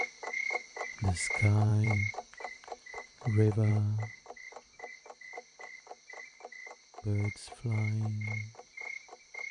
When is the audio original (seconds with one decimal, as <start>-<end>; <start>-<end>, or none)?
0.0-1.7; 3.7-9.5